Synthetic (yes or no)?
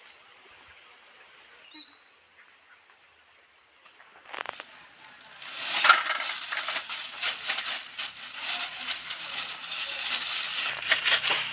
no